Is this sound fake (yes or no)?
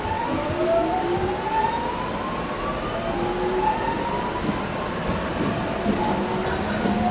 no